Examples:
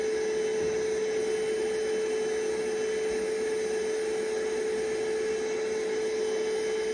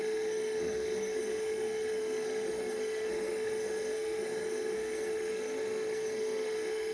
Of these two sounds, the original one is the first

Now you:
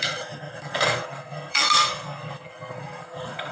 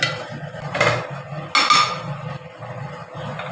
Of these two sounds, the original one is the second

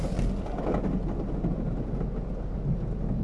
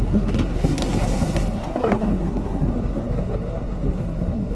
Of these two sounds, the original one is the first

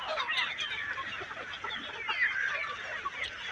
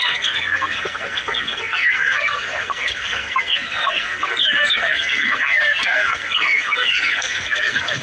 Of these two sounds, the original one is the first